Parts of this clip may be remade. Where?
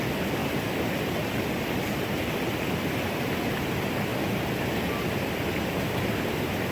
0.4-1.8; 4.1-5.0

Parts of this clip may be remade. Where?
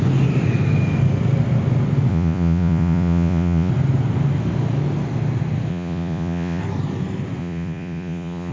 2.1-3.7; 5.7-6.6; 7.4-8.5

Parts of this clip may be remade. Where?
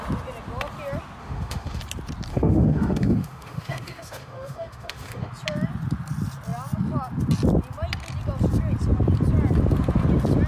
1.2-1.8; 2.3-5.3